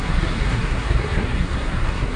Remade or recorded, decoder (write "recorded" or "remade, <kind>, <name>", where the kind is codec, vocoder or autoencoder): remade, codec, SNAC